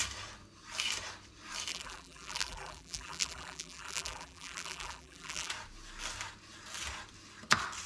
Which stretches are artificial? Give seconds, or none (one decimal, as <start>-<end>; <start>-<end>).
1.7-5.5